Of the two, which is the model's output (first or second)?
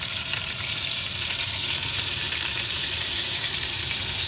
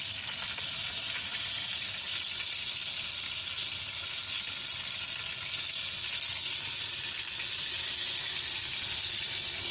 first